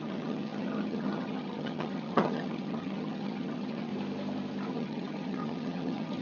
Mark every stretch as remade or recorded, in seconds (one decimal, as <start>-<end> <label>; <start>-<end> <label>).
0.0-3.9 remade; 3.9-4.7 recorded; 4.7-6.2 remade